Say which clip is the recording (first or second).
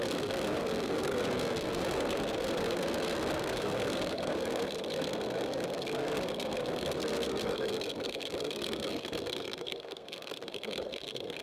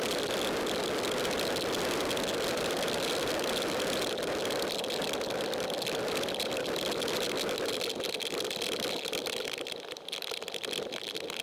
second